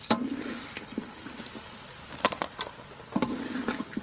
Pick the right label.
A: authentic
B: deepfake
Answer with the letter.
A